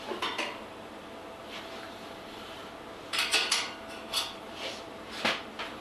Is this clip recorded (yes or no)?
no